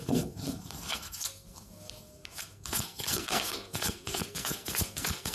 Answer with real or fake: fake